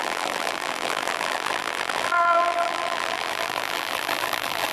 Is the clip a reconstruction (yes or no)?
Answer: yes